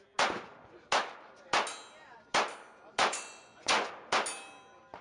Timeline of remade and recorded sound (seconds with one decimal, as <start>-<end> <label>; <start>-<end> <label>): 0.0-3.0 recorded; 3.0-3.9 remade; 3.9-5.0 recorded